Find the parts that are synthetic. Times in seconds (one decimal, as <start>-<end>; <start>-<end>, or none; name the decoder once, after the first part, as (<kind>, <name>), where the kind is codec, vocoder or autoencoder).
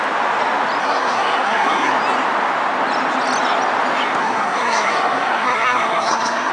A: 0.8-1.9 (codec, SNAC); 4.2-6.5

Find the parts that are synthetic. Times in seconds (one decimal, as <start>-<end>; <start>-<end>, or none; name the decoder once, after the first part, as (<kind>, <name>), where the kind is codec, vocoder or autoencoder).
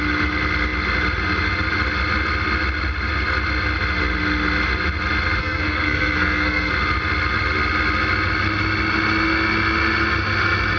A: 5.4-6.7 (codec, SNAC)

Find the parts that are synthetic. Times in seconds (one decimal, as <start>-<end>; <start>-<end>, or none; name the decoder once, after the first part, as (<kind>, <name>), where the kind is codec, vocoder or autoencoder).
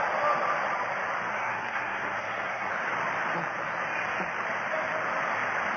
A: 1.3-2.7 (codec, SNAC)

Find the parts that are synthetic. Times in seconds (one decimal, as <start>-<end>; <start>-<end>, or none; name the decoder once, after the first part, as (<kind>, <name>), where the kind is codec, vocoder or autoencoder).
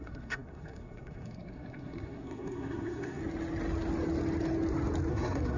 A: 0.0-3.2 (codec, SNAC); 5.1-5.6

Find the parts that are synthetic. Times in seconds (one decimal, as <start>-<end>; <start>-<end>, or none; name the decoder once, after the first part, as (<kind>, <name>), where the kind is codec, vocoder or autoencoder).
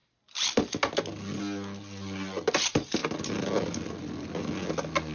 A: none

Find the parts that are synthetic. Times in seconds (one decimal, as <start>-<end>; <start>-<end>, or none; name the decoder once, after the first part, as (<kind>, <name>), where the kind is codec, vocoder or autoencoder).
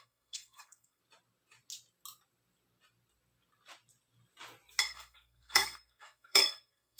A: 0.0-1.0 (codec, SNAC); 4.8-7.0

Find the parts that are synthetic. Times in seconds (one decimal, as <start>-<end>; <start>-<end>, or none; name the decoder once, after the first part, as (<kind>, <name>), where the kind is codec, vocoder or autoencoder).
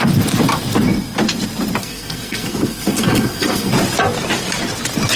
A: 1.8-3.7 (codec, SNAC)